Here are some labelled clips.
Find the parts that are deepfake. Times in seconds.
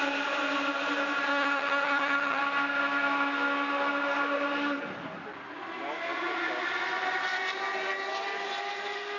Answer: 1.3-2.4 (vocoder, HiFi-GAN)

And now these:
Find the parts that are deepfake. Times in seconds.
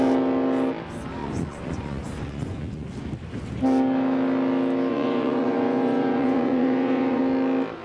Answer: 1.2-3.1 (vocoder, Vocos); 4.9-7.2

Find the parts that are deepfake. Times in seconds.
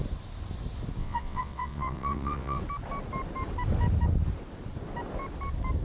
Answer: 1.0-2.6 (vocoder, WaveNeXt)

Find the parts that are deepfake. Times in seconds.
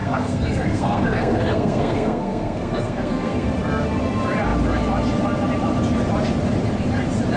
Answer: 0.0-3.5 (codec, SNAC)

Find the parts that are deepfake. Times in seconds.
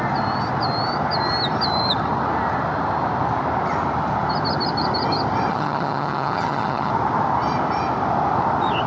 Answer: 5.5-6.9 (vocoder, HiFi-GAN)